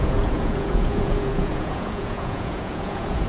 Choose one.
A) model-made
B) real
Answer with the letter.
A